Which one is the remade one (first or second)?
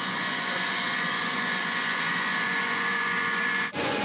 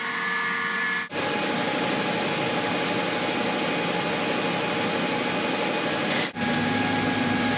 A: first